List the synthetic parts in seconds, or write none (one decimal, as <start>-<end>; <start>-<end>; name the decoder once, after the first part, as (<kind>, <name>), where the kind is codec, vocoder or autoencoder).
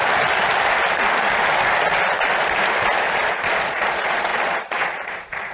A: 3.3-5.5 (vocoder, Vocos)